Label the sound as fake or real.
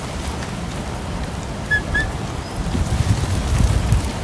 real